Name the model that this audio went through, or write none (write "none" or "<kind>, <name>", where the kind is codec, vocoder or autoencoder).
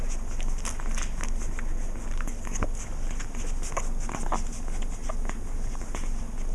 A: none